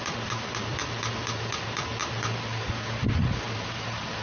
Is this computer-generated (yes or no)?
yes